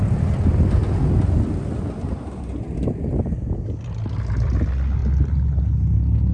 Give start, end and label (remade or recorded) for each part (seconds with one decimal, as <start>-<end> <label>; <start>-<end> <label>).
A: 0.0-6.3 recorded